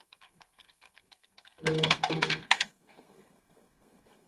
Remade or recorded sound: remade